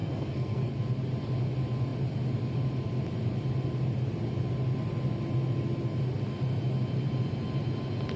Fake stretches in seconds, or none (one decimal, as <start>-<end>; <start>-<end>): 0.0-0.7